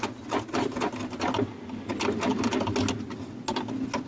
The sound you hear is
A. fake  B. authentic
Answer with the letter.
B